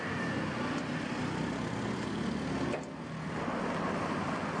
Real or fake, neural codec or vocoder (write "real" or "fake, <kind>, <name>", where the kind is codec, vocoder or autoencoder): real